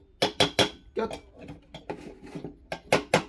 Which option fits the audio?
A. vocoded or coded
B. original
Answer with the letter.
B